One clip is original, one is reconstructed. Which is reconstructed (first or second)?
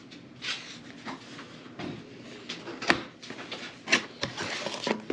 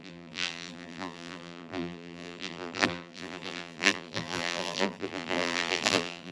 second